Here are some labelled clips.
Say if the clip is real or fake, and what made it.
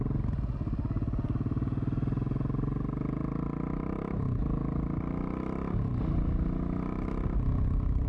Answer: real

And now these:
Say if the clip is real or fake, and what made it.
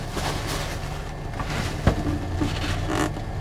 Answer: real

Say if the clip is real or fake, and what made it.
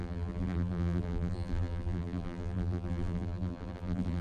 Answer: fake, vocoder, BigVGAN v2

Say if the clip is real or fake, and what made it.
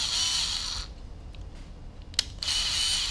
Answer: real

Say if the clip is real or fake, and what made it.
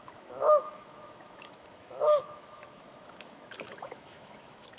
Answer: fake, autoencoder, DAC-VAE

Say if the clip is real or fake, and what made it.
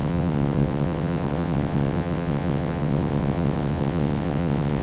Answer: fake, vocoder, WaveNeXt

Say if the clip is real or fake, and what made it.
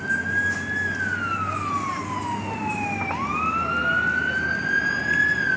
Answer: real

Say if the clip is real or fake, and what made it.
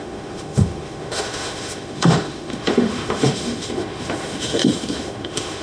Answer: fake, autoencoder, DAC-VAE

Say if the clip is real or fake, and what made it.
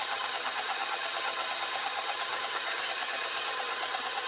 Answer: fake, vocoder, HiFi-GAN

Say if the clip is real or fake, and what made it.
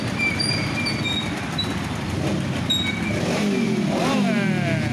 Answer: real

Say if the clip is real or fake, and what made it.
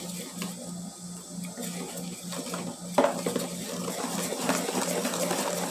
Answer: real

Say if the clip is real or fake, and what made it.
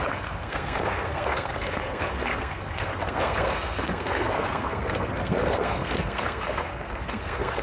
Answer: fake, codec, SNAC